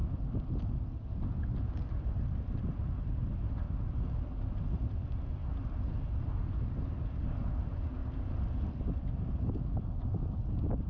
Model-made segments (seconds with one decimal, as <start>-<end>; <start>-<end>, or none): 5.4-7.2; 8.0-9.1